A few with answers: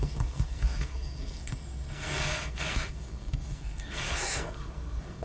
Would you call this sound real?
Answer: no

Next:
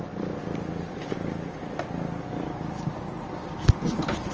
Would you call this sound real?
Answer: yes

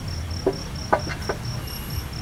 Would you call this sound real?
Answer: yes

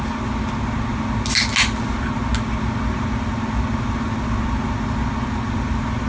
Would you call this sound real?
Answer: yes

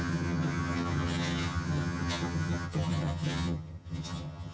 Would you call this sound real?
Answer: no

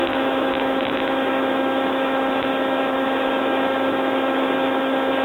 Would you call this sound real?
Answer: no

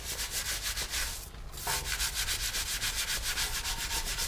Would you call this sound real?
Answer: yes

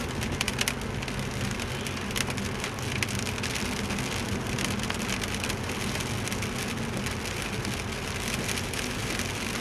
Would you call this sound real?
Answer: yes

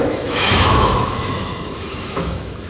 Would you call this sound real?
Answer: no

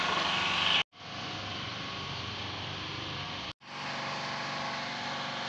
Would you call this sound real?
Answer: yes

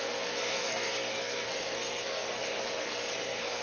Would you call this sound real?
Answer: no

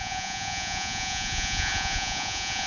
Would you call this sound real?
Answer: no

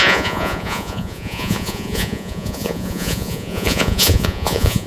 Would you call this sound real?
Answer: no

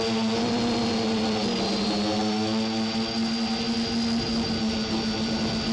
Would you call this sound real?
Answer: yes